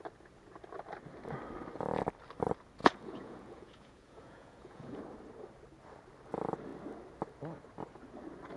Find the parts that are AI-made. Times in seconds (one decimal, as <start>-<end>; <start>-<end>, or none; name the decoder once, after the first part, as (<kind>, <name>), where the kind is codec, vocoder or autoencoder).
2.8-5.0 (vocoder, Vocos)